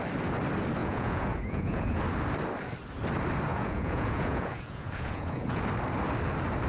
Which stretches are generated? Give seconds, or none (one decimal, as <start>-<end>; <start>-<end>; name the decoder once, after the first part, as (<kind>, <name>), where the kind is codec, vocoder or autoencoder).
0.8-2.0 (vocoder, Vocos); 3.5-5.6

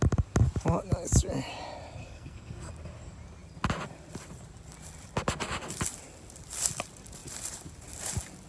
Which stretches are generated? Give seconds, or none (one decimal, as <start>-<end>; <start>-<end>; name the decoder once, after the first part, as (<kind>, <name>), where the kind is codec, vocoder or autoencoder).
2.0-2.7 (codec, SNAC)

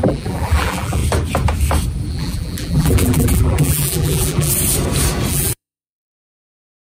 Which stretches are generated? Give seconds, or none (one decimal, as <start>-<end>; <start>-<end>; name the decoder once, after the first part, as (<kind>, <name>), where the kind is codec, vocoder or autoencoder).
0.0-1.0 (vocoder, BigVGAN v2); 2.1-4.5; 5.3-6.8